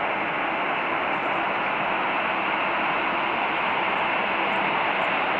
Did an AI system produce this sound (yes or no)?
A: no